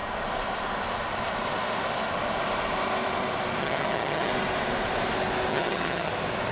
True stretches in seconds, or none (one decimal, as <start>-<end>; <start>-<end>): 0.0-3.6; 4.3-5.5; 6.1-6.5